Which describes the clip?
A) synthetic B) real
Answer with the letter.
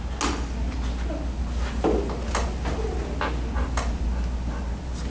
B